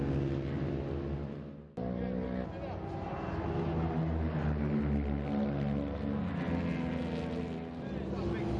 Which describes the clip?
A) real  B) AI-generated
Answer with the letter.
A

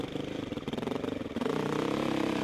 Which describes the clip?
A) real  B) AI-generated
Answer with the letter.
B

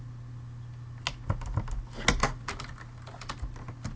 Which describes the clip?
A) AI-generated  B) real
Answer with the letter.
B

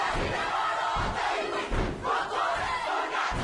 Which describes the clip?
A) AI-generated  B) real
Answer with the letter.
B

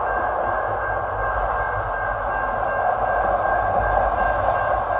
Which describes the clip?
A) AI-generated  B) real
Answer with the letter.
B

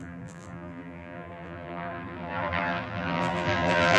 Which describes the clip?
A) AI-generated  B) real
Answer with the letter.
A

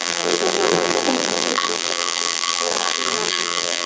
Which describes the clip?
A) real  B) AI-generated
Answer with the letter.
B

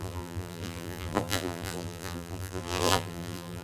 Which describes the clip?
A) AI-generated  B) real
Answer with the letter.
A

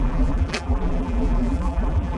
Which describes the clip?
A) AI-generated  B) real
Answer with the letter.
A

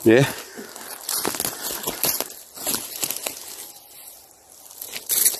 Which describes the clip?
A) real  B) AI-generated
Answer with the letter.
A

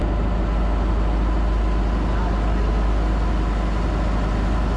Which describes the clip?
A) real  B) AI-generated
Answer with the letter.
A